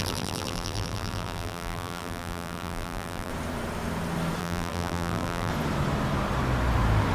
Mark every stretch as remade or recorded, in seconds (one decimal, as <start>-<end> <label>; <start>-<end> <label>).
0.0-3.3 remade; 3.3-4.4 recorded; 4.4-5.5 remade; 5.5-7.1 recorded